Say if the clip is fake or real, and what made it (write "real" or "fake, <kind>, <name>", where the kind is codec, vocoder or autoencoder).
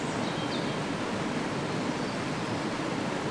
real